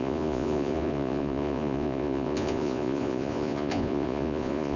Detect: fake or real fake